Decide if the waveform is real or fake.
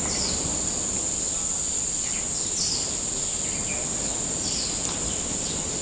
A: real